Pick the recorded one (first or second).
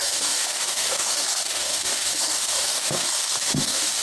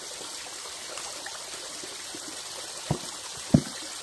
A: second